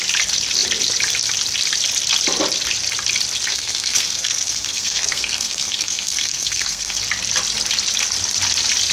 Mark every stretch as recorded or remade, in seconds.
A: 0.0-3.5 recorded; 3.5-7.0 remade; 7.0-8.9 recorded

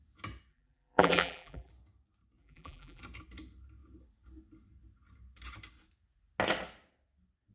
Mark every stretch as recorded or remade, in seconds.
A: 0.0-0.5 recorded; 0.5-1.7 remade; 1.7-2.4 recorded; 2.4-3.0 remade; 3.0-7.5 recorded

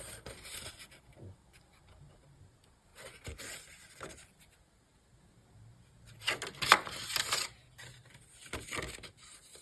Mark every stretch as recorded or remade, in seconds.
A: 0.0-9.6 recorded